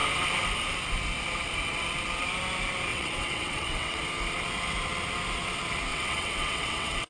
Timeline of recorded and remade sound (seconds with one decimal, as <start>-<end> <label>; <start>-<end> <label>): 0.0-2.9 recorded; 2.9-4.0 remade; 4.0-5.9 recorded; 5.9-7.1 remade